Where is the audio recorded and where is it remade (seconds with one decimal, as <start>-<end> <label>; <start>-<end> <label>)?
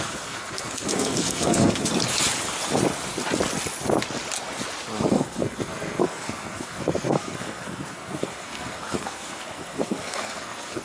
0.0-1.9 remade; 1.9-5.1 recorded; 5.1-10.8 remade